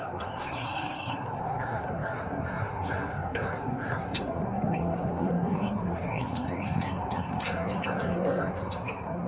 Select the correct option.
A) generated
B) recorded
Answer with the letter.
A